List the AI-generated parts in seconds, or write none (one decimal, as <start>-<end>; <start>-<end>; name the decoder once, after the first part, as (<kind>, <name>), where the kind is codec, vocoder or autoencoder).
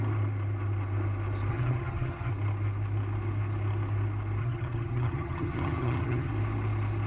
1.5-2.3 (vocoder, HiFi-GAN); 4.4-6.3